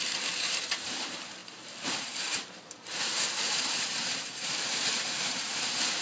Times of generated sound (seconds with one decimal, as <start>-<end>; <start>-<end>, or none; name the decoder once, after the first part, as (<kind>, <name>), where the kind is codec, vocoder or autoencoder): 0.0-6.0 (vocoder, BigVGAN v2)

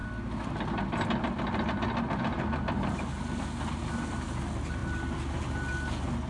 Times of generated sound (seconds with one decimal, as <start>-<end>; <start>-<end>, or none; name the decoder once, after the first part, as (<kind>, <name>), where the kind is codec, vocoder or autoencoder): none